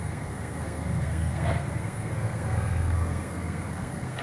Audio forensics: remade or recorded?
remade